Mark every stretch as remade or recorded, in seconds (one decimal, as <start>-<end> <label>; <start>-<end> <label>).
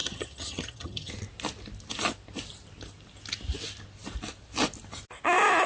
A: 0.0-1.1 remade; 1.1-5.7 recorded